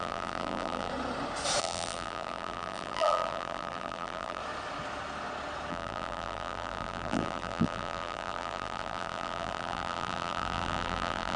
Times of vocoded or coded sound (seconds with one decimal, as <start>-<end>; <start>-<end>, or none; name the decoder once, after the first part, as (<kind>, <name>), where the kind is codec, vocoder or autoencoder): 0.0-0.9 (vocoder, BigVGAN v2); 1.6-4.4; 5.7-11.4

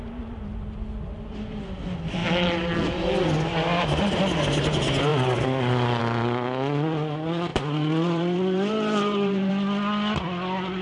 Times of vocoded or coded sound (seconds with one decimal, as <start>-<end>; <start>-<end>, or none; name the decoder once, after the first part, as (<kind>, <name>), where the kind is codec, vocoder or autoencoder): 7.5-9.5 (vocoder, BigVGAN v2)

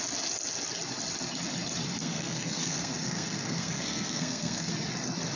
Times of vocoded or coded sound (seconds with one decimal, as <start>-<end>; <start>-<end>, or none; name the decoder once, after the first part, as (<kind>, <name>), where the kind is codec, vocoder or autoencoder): 2.0-4.7 (codec, SNAC)